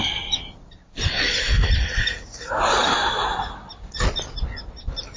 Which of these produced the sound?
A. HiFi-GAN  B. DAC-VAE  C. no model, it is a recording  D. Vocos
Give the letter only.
C